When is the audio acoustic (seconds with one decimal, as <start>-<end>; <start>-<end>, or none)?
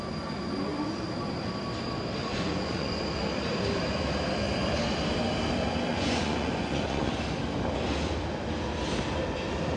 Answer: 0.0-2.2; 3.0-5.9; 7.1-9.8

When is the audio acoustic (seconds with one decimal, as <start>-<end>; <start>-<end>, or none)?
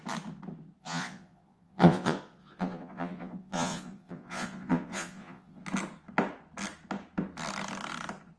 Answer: 0.0-0.8; 5.6-8.4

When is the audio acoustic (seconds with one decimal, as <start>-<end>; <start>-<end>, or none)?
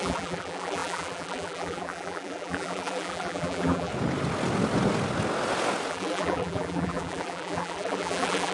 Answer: 3.9-5.9